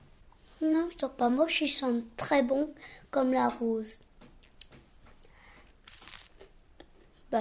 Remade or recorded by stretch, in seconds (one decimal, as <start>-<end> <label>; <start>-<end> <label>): 0.0-0.5 recorded; 0.5-2.1 remade; 2.1-7.4 recorded